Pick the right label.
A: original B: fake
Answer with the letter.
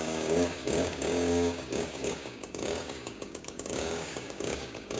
B